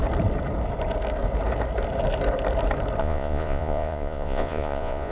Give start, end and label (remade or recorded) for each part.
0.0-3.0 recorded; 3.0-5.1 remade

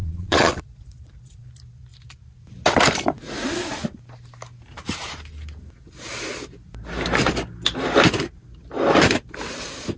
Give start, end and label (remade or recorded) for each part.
0.0-1.5 remade; 1.5-10.0 recorded